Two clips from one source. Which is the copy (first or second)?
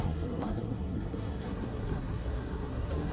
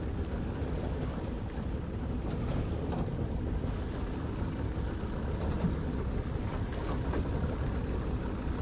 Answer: first